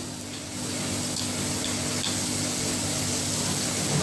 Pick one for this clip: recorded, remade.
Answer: recorded